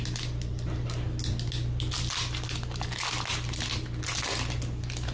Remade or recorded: recorded